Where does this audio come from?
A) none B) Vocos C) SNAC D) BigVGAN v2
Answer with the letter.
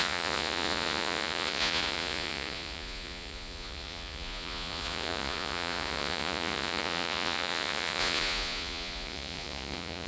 B